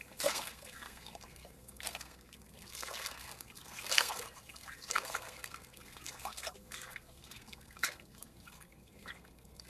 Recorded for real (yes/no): no